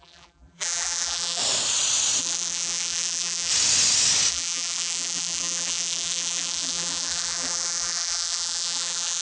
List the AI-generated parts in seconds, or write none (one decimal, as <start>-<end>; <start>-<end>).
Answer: 0.0-1.4; 2.2-3.5; 4.3-9.2